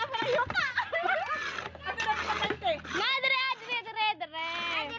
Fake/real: real